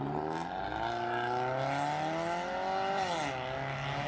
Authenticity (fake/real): real